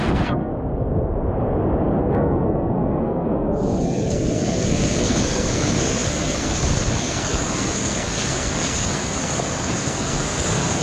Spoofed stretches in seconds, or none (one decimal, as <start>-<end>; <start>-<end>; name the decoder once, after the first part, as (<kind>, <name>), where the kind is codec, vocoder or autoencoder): 0.0-0.5 (codec, SNAC); 2.0-10.8